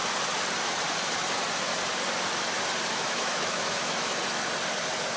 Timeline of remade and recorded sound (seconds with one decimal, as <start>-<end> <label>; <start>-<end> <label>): 0.0-2.9 recorded; 2.9-4.1 remade; 4.1-5.2 recorded